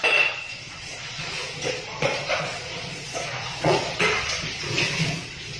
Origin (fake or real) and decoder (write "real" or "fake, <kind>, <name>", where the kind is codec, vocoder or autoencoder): fake, vocoder, Vocos